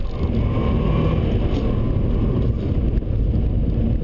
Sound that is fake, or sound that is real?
real